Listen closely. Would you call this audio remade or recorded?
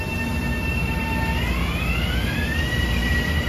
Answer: recorded